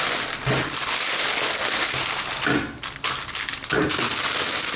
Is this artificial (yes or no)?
no